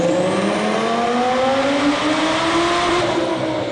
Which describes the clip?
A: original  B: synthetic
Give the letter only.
A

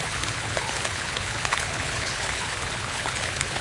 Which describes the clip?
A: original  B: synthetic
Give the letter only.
B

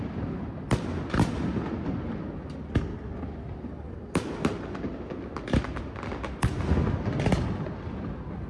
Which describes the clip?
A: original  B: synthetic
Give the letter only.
A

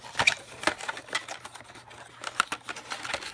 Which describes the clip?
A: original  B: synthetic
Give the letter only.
A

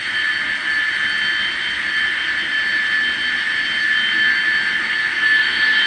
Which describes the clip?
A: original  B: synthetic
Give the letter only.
A